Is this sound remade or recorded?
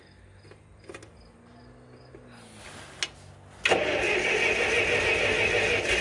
recorded